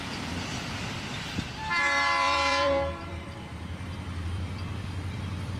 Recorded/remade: remade